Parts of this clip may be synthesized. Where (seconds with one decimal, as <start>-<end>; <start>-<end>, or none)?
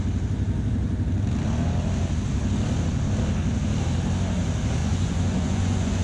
4.8-6.0